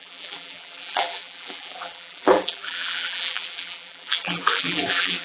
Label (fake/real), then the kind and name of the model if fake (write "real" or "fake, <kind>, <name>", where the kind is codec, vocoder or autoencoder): fake, vocoder, BigVGAN v2